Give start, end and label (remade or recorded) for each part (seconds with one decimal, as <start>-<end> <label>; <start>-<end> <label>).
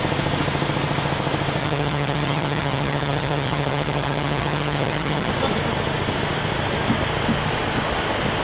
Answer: 0.0-1.6 recorded; 1.6-5.3 remade; 5.3-8.4 recorded